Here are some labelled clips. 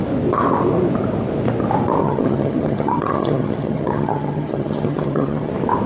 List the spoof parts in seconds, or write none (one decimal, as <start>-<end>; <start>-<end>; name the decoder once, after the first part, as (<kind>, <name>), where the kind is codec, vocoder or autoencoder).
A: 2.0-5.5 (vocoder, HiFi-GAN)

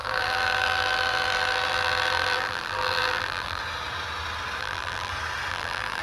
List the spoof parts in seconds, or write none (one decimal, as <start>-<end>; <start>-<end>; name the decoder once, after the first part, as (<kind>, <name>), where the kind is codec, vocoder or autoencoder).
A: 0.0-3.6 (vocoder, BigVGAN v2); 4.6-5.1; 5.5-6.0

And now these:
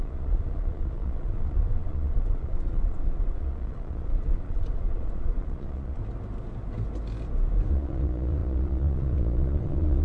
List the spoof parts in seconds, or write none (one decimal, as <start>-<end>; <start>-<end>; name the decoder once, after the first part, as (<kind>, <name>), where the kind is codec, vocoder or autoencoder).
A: 0.0-6.0 (vocoder, Vocos); 7.7-10.0

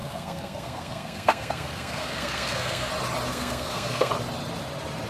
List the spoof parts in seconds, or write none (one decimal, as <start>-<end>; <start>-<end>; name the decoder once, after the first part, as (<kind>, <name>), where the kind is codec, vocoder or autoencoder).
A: 0.0-2.9 (codec, SNAC); 3.3-4.1